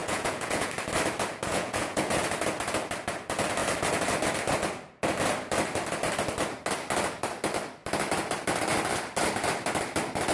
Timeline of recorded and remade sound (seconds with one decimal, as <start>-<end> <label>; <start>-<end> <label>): 0.0-0.7 remade; 0.7-1.5 recorded; 1.5-2.1 remade; 2.1-10.3 recorded